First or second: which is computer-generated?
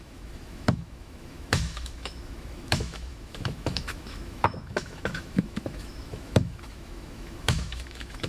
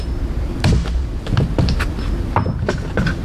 first